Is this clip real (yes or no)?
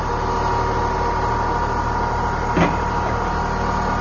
yes